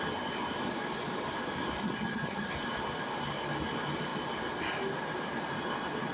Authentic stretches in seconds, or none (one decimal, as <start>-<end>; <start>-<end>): 0.0-1.8; 2.5-6.1